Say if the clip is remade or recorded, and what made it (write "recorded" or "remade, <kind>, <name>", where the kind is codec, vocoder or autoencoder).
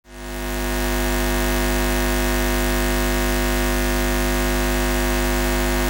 recorded